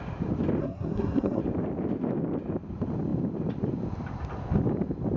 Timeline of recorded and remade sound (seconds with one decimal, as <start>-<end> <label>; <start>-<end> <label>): 0.0-0.6 recorded; 0.6-1.4 remade; 1.4-5.2 recorded